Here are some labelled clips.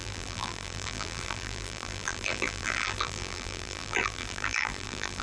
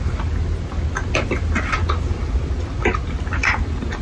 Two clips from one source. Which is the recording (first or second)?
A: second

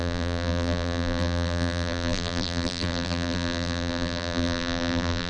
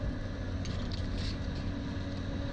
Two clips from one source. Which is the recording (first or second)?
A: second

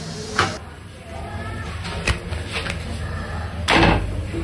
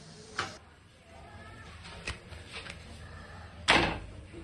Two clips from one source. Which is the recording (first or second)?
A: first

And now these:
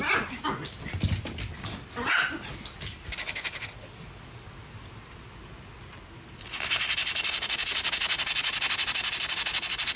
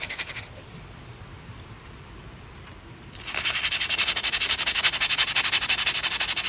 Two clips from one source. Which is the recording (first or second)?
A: first